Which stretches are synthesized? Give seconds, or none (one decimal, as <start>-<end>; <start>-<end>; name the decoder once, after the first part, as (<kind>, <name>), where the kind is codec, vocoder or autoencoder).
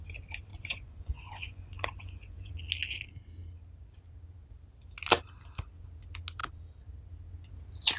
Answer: 0.5-2.5 (vocoder, Vocos)